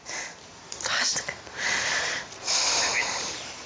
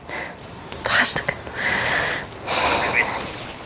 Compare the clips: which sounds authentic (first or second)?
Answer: second